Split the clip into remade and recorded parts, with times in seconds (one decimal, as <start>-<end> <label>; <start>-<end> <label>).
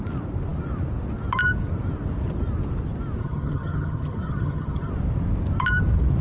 0.0-3.2 recorded; 3.2-4.9 remade; 4.9-6.2 recorded